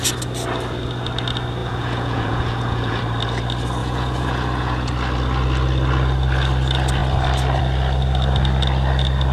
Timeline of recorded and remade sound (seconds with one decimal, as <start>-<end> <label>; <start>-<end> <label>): 0.0-1.6 recorded; 1.6-3.0 remade; 3.0-3.8 recorded; 3.8-4.9 remade; 4.9-9.3 recorded